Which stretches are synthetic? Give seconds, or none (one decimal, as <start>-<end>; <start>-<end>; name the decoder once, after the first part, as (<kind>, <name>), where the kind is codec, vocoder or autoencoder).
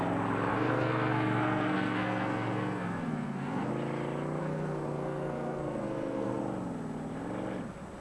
0.5-3.7 (codec, SNAC); 4.4-6.4